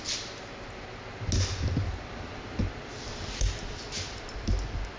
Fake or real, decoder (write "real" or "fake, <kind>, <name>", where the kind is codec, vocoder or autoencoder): real